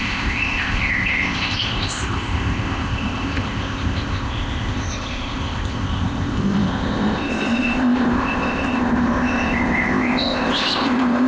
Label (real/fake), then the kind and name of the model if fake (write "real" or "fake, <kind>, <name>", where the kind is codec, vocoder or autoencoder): fake, codec, ZipCodec